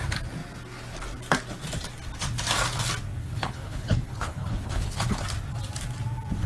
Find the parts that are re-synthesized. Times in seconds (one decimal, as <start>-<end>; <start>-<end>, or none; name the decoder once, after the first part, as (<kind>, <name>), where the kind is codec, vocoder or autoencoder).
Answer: 3.2-5.2 (codec, HILCodec)